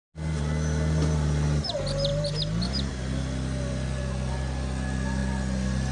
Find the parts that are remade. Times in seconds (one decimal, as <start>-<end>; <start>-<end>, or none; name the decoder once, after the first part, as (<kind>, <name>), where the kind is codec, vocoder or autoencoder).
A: none